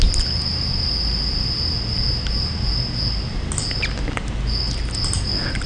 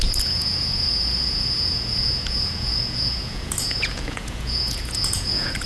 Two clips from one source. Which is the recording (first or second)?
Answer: first